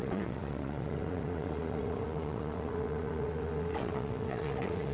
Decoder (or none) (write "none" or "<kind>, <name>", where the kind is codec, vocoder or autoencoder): vocoder, WaveNeXt